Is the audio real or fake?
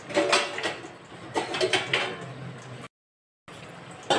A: real